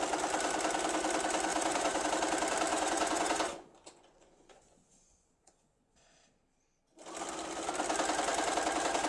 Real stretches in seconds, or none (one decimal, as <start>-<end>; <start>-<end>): 0.0-1.5; 2.1-2.7; 6.1-9.1